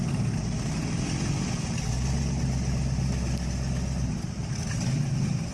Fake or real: real